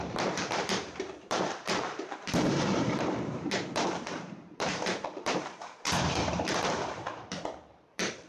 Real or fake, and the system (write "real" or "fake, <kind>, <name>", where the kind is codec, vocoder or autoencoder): fake, vocoder, BigVGAN v2